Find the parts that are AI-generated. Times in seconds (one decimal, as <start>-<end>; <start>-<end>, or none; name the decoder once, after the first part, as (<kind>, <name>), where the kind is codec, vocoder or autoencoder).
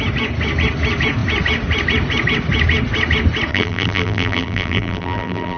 3.5-5.6 (vocoder, BigVGAN v2)